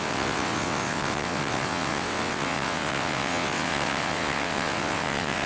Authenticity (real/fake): fake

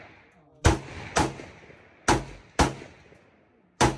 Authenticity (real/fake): real